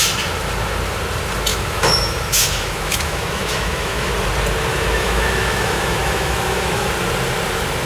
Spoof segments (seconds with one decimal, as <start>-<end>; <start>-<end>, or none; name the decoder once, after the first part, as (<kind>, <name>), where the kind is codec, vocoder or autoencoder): 1.5-4.1 (autoencoder, DAC-VAE); 4.7-6.9